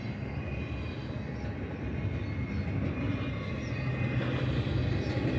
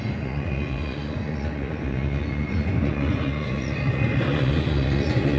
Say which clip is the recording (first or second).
first